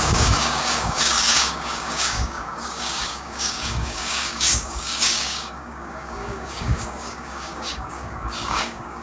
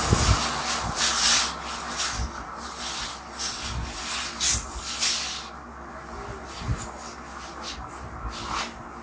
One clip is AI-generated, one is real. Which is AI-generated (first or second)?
first